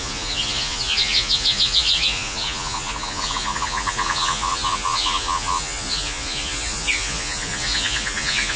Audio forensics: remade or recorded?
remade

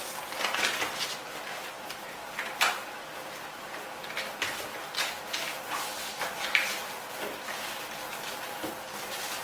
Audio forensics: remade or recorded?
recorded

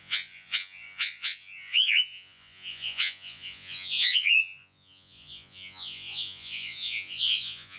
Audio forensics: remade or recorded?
remade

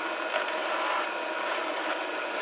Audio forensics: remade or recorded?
recorded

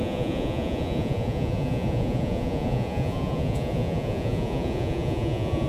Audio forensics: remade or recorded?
remade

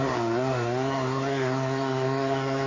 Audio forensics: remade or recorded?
remade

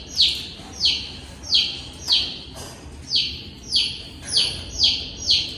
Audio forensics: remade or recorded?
recorded